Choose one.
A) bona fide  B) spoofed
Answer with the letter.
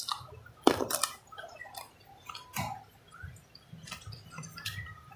B